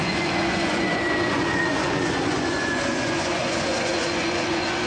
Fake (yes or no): yes